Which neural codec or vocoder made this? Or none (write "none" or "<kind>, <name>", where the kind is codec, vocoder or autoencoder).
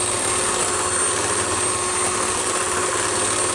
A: none